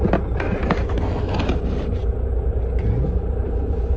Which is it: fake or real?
real